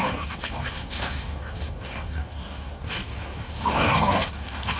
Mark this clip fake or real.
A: fake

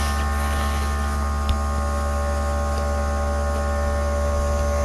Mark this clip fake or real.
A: real